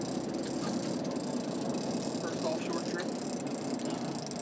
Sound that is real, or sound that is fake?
real